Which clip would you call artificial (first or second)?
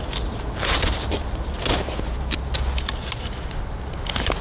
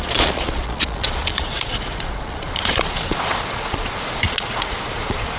second